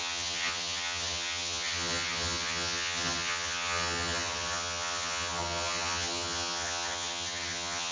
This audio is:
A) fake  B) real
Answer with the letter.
A